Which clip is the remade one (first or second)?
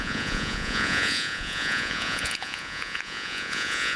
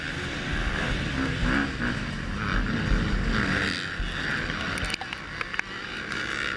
first